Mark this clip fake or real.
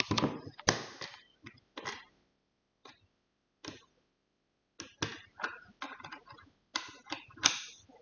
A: real